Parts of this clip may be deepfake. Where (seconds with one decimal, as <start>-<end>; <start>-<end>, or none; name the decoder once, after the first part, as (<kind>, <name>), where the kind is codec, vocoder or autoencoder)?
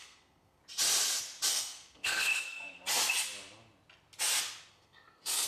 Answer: 0.0-0.6 (codec, SNAC); 1.5-2.8; 4.7-5.5